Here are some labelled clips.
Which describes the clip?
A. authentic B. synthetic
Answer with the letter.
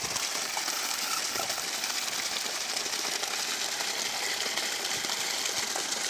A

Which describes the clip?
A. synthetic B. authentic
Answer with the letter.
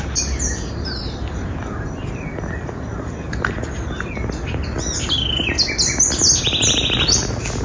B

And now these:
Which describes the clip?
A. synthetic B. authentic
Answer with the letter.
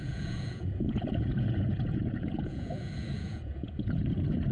A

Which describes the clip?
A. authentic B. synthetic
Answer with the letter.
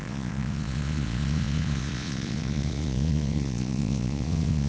B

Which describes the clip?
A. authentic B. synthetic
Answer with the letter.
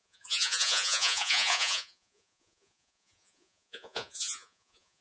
B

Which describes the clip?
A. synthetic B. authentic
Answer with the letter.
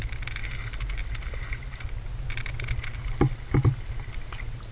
B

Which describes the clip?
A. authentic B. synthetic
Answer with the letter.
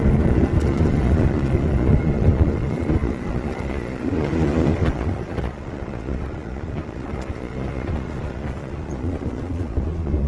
B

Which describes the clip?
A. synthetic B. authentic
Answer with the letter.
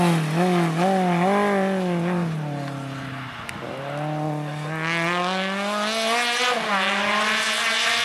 B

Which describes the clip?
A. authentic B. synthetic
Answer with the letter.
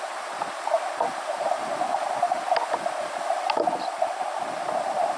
A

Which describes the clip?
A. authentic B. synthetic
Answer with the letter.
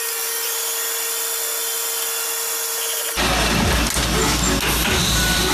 A